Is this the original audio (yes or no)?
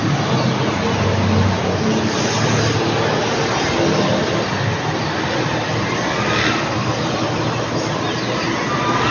yes